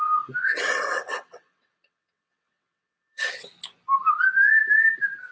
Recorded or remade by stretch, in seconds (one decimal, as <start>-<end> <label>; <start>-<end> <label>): 0.0-0.4 recorded; 0.4-3.3 remade; 3.3-5.3 recorded